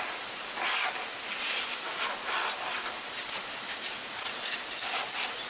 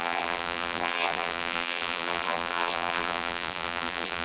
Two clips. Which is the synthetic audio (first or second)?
second